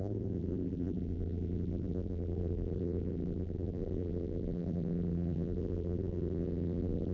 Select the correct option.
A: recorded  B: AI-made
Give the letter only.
B